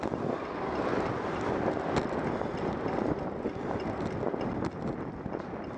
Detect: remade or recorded recorded